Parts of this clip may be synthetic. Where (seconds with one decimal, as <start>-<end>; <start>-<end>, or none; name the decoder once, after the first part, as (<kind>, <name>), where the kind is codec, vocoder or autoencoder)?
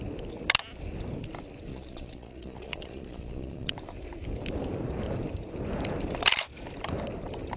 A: 1.7-3.8 (vocoder, Vocos)